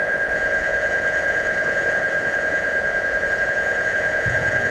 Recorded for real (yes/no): no